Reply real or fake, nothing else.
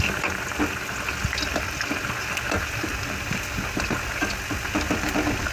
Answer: real